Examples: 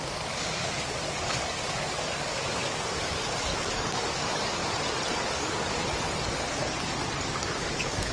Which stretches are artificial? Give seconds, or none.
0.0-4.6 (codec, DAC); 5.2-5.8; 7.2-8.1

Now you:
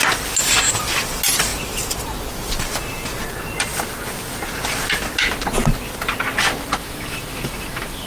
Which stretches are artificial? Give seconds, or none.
6.8-8.1 (autoencoder, DAC-VAE)